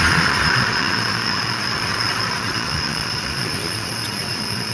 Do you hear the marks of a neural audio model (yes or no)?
yes